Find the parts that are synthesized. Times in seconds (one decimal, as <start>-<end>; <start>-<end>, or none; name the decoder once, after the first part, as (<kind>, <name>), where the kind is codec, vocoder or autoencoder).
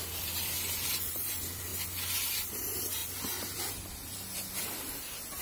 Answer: 0.0-1.7 (vocoder, BigVGAN v2); 2.3-5.4